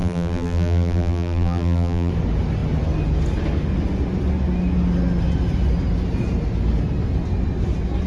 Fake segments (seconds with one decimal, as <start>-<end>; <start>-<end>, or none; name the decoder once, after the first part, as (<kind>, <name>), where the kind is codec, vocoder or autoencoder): 0.0-2.1 (vocoder, BigVGAN v2)